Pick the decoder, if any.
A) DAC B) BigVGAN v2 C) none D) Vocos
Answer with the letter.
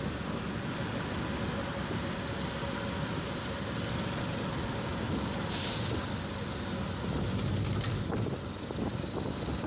C